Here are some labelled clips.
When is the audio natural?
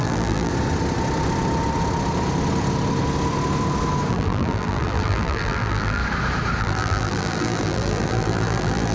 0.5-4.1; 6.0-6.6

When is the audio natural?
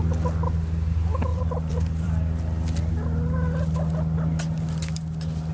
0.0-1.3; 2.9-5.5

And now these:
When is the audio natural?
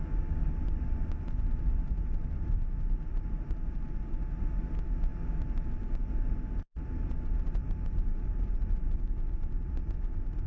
0.0-3.1; 4.1-7.6; 9.7-10.5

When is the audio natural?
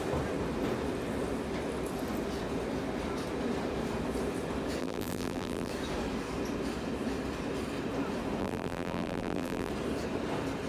0.0-4.8; 5.7-8.4; 9.7-10.7